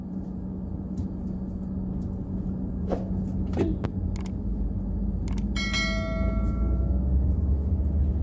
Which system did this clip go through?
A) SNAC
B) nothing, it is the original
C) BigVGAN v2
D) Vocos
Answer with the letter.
B